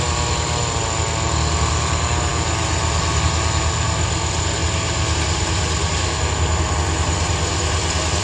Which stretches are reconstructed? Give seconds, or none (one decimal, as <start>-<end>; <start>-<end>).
none